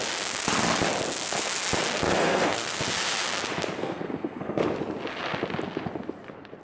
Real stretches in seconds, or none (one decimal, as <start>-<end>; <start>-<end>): 0.0-2.2; 2.8-3.8; 4.6-6.6